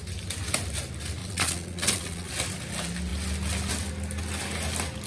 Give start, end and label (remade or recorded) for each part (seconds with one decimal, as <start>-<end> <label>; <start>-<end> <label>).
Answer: 0.0-1.2 recorded; 1.2-2.3 remade; 2.3-5.1 recorded